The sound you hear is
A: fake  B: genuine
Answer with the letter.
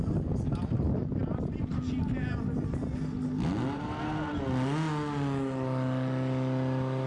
B